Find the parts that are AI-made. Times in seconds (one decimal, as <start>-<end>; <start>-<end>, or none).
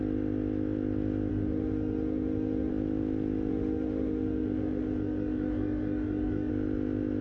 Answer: 1.3-2.7; 3.5-6.5